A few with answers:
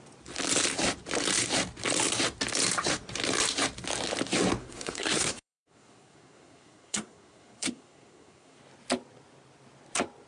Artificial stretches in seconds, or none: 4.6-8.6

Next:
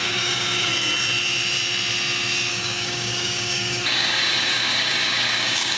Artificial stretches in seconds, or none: 0.0-0.7; 2.5-5.8

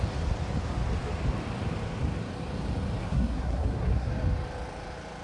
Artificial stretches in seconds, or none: 3.0-4.1

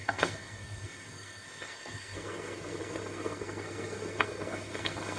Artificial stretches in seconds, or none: 0.0-5.2

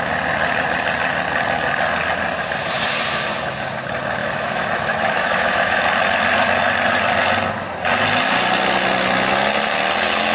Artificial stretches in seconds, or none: 4.2-5.8